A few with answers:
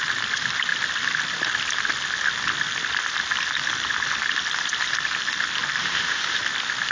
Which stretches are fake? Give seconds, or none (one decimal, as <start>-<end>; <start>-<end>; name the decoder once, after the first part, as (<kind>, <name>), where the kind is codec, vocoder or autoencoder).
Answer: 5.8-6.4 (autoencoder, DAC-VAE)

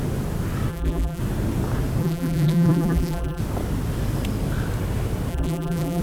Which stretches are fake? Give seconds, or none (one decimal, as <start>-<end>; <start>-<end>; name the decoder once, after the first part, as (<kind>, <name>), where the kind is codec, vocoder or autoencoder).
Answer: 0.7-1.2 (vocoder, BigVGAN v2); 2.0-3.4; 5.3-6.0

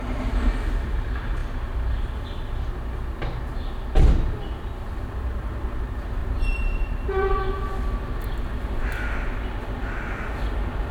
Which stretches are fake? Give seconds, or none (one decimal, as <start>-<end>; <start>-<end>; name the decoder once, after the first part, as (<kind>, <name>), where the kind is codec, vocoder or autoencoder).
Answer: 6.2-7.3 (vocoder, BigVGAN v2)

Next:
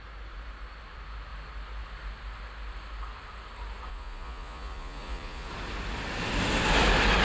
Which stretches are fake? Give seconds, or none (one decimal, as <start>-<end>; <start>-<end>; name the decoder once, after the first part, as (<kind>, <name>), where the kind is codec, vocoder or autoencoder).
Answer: 3.9-5.5 (vocoder, Vocos)